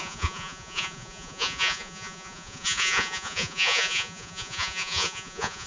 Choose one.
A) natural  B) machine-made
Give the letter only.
B